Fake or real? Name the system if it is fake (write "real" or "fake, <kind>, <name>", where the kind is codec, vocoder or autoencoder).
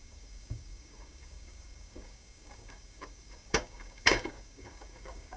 fake, codec, DAC